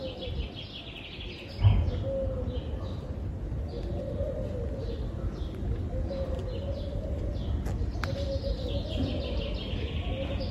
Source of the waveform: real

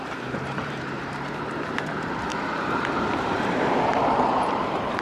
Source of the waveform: fake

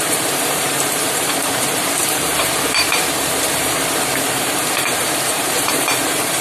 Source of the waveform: fake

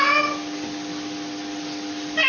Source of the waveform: real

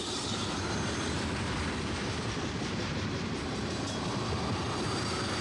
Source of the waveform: fake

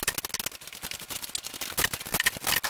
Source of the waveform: real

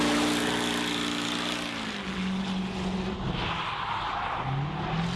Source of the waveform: real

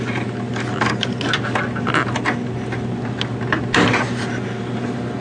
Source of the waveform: real